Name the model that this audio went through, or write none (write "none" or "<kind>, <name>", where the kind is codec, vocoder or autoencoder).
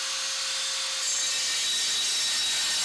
none